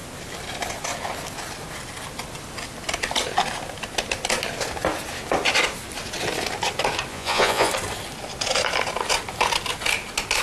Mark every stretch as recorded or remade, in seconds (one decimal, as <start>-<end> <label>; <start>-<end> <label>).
0.0-7.1 recorded; 7.1-7.7 remade; 7.7-10.4 recorded